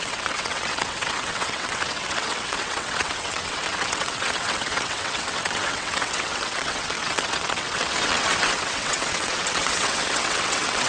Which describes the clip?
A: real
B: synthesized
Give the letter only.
B